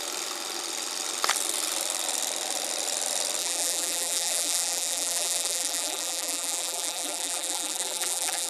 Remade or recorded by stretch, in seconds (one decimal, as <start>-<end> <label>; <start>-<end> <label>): 0.0-3.4 recorded; 3.4-8.5 remade